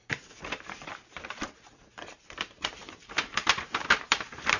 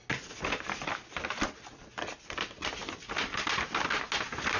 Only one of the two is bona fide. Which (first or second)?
second